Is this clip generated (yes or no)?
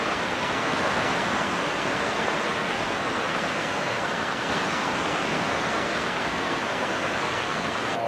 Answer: yes